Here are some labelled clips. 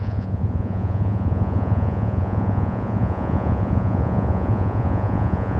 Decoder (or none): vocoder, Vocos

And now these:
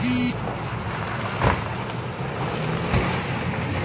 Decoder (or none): none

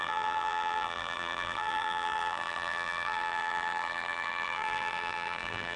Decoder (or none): vocoder, BigVGAN v2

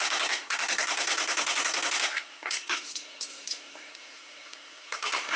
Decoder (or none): codec, SNAC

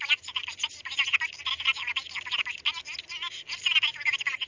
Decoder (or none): none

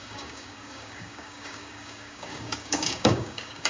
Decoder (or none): codec, DAC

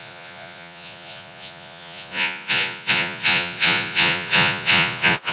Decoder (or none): vocoder, Vocos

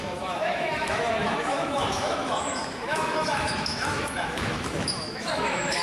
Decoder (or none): autoencoder, DAC-VAE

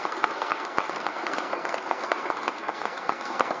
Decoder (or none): codec, SNAC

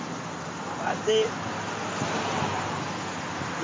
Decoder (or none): none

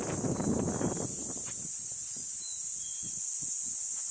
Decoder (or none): none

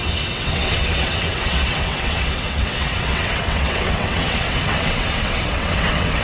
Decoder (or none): vocoder, WaveNeXt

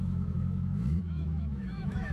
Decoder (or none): autoencoder, DAC-VAE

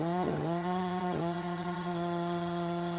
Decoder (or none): vocoder, HiFi-GAN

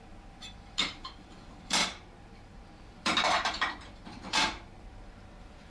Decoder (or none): vocoder, BigVGAN v2